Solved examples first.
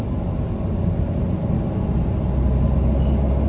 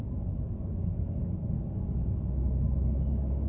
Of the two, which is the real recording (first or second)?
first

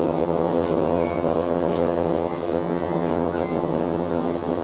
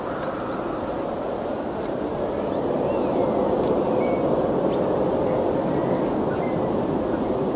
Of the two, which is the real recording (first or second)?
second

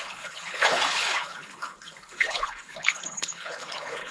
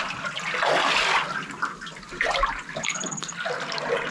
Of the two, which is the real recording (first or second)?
second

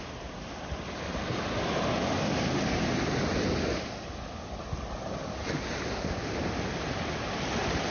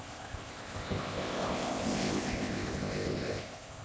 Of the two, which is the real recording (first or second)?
first